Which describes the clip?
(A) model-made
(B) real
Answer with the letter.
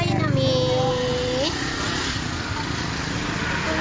B